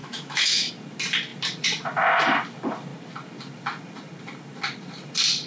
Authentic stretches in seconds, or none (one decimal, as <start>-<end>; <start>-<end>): 0.7-5.5